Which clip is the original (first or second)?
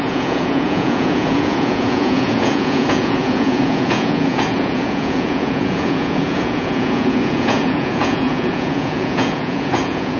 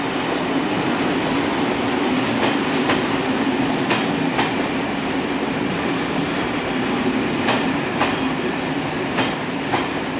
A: second